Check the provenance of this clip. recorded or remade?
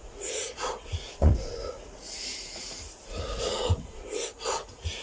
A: remade